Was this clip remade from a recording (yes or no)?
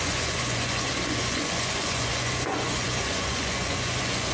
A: yes